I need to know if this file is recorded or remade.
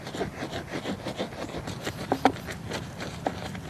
recorded